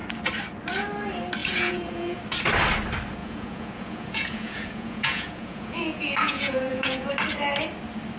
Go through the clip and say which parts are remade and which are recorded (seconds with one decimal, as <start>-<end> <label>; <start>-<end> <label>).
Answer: 0.0-1.4 recorded; 1.4-2.2 remade; 2.2-3.2 recorded; 3.2-7.1 remade; 7.1-8.2 recorded